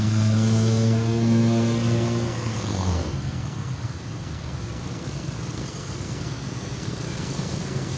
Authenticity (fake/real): fake